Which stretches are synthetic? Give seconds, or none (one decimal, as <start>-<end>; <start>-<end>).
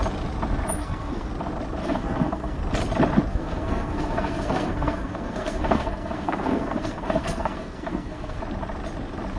0.8-1.3; 1.8-2.6; 3.3-8.4